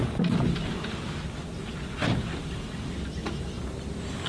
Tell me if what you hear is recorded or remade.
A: recorded